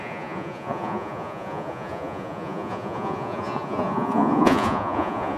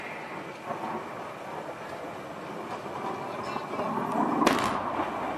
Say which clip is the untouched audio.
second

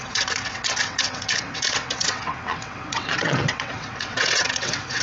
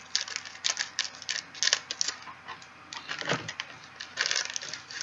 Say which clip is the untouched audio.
second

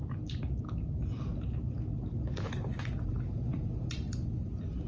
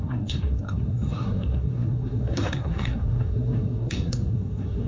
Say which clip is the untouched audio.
first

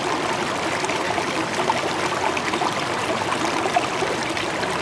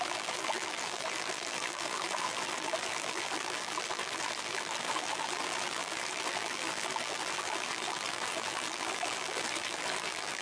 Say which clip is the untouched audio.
first